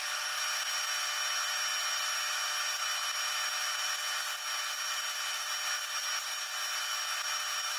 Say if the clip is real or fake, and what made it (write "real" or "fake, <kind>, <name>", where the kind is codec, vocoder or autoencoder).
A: real